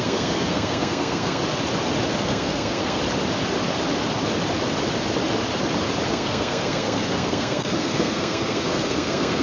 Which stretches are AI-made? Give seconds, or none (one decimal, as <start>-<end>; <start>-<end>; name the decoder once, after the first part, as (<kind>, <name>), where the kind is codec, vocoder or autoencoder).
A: 0.0-1.4 (codec, SNAC); 2.2-3.0; 6.1-9.4